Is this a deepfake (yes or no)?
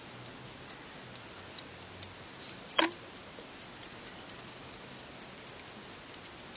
no